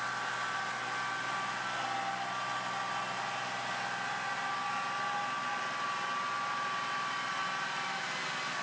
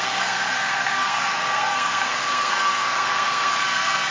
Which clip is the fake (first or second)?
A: second